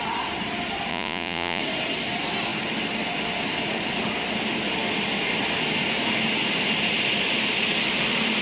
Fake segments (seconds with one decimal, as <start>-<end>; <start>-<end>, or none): 0.9-1.6